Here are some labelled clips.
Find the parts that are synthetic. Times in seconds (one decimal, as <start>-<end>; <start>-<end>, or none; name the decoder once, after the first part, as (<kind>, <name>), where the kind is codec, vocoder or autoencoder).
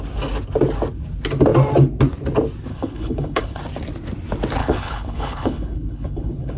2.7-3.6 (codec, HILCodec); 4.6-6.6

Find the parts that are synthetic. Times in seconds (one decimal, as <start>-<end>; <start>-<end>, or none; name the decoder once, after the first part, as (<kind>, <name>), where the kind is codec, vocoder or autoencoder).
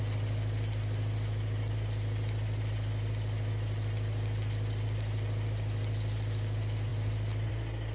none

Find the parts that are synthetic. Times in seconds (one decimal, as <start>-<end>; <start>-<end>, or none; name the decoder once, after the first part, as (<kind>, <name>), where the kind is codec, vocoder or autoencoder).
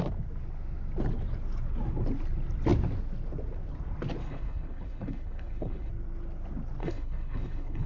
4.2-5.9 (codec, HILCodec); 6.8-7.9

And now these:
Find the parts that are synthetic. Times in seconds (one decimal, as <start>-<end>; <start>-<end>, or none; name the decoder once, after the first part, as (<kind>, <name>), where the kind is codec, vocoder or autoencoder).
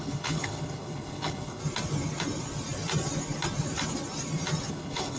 0.0-1.6 (codec, HILCodec); 4.7-5.2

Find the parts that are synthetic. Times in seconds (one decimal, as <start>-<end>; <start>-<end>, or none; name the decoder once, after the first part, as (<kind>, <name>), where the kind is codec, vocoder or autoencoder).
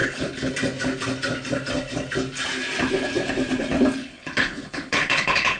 0.0-0.5 (codec, HILCodec); 4.0-5.6